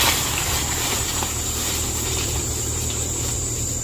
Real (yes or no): no